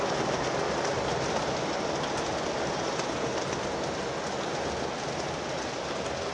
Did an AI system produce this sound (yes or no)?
no